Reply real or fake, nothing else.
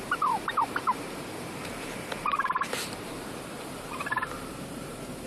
fake